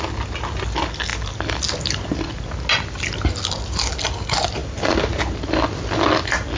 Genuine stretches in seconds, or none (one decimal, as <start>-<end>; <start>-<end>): 0.0-6.6